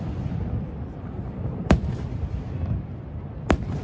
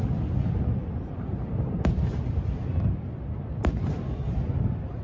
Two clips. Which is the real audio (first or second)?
second